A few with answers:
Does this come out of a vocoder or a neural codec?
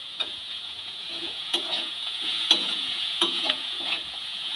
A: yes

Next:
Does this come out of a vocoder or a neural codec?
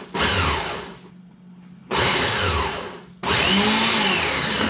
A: no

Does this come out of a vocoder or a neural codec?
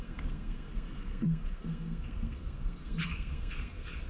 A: yes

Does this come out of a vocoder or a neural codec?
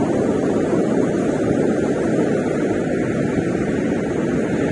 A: no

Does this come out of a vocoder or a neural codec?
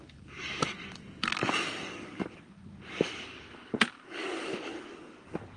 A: yes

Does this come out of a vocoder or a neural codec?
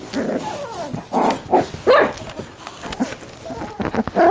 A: no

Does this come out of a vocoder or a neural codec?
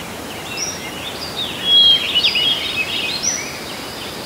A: no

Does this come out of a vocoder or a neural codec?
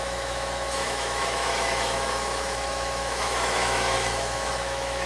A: yes